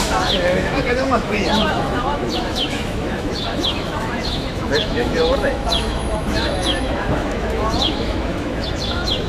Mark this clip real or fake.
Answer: fake